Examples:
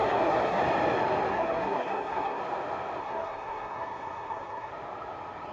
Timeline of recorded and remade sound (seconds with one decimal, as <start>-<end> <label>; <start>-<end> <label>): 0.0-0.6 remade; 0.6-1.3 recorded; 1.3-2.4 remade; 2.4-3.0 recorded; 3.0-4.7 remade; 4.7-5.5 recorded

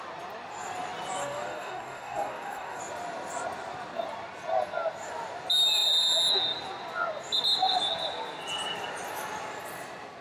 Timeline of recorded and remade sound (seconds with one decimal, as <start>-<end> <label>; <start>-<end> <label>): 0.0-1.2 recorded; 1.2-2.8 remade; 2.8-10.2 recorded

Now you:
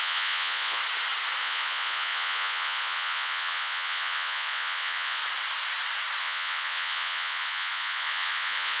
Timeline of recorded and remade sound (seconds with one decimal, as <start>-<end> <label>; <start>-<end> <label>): 0.0-0.8 remade; 0.8-1.4 recorded; 1.4-5.2 remade; 5.2-6.2 recorded; 6.2-8.8 remade

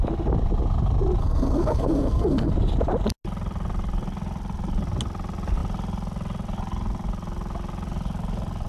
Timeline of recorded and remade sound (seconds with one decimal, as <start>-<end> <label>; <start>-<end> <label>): 0.0-1.2 recorded; 1.2-2.5 remade; 2.5-8.7 recorded

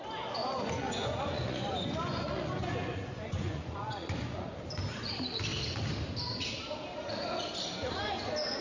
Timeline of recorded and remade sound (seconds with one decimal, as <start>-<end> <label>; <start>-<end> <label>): 0.0-0.4 recorded; 0.4-4.6 remade; 4.6-8.6 recorded

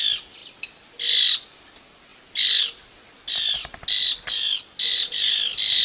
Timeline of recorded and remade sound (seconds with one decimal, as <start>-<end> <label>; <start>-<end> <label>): 0.0-5.8 recorded

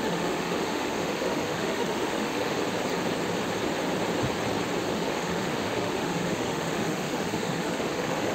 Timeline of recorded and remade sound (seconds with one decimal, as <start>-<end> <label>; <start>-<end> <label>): 0.0-2.6 remade; 2.6-4.9 recorded; 4.9-8.3 remade

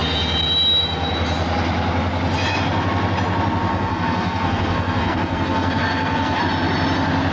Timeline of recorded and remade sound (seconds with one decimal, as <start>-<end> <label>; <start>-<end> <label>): 0.0-3.7 recorded; 3.7-6.4 remade; 6.4-7.3 recorded